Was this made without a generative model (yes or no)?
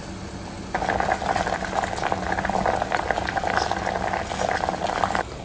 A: yes